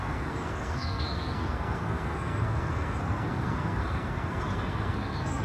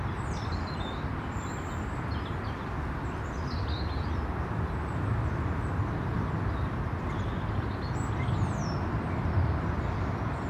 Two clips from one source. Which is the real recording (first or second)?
second